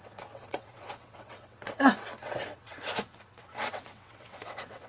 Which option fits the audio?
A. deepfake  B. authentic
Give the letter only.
A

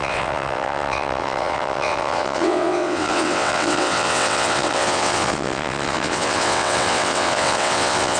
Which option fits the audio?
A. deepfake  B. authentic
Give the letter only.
A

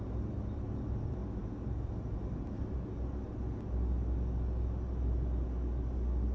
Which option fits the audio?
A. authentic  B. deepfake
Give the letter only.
A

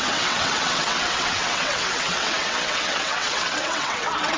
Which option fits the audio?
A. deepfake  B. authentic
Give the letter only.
A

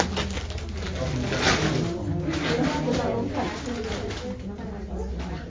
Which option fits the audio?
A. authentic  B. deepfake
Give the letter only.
A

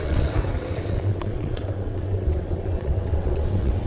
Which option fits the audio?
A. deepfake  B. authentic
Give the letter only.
A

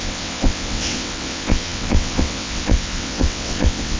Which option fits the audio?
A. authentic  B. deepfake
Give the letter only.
B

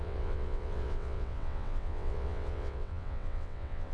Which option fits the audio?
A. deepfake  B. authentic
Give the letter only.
A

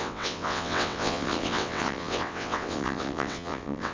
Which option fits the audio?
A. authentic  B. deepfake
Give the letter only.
B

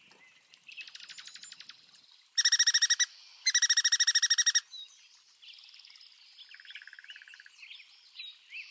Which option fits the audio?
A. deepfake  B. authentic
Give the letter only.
B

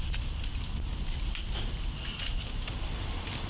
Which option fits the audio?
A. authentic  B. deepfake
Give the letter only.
A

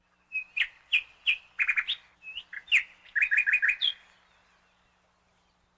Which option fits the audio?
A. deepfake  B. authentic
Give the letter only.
B